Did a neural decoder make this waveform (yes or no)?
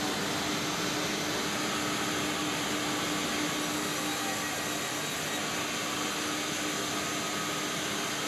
no